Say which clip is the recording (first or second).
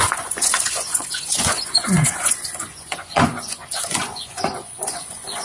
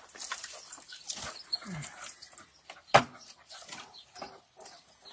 second